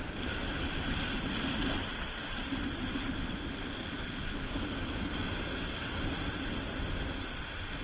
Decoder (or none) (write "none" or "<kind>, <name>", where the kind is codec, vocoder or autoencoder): none